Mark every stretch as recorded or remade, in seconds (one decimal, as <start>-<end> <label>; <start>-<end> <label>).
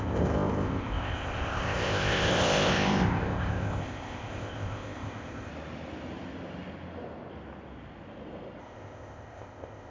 0.0-5.5 remade; 5.5-8.6 recorded; 8.6-9.9 remade